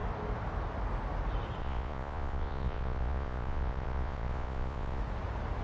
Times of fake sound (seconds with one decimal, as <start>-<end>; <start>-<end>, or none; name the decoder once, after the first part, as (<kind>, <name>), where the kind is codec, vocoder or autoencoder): 1.6-5.0 (vocoder, Vocos)

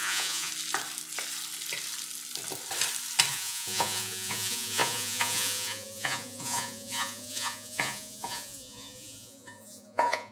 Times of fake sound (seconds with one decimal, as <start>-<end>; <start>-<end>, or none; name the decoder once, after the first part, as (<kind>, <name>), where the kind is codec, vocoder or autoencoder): 0.0-0.5 (vocoder, Vocos); 3.3-10.3

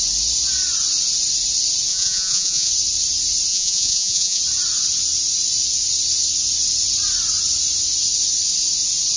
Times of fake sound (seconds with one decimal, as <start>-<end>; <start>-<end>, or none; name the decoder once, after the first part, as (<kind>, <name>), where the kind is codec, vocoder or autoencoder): 1.9-2.7 (vocoder, Vocos); 3.5-4.4

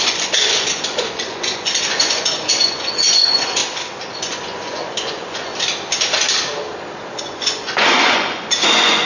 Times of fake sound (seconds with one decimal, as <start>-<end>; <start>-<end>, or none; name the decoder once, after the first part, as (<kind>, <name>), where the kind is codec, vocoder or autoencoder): 0.0-3.6 (vocoder, Vocos); 4.2-5.5; 7.2-9.1

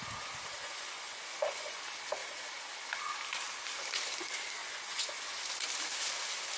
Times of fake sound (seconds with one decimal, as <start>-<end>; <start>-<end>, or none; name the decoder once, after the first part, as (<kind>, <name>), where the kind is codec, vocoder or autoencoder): 0.6-1.8 (vocoder, Vocos); 4.6-5.4

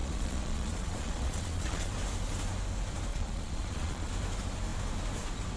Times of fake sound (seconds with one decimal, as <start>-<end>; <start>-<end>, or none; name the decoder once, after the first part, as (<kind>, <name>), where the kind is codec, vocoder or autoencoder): 0.0-1.9 (vocoder, Vocos); 3.1-4.1